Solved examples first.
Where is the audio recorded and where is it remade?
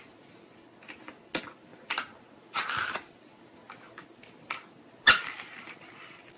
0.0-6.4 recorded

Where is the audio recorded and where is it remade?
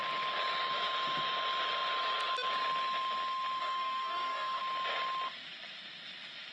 0.0-3.6 recorded; 3.6-4.6 remade; 4.6-6.5 recorded